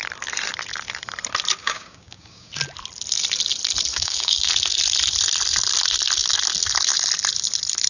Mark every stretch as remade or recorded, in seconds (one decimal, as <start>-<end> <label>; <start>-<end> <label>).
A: 0.0-1.6 recorded; 1.6-2.5 remade; 2.5-3.9 recorded; 3.9-4.5 remade; 4.5-7.9 recorded